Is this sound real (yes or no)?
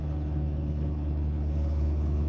no